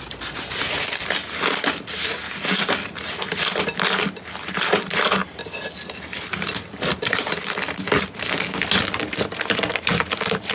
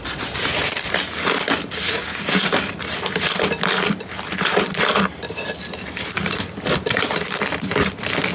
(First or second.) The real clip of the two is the first